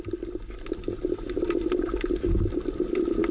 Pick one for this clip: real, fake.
real